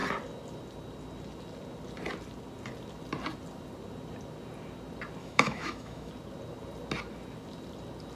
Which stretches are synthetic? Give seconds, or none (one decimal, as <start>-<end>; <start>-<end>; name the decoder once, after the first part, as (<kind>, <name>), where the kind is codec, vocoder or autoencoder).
5.2-6.1 (autoencoder, DAC-VAE)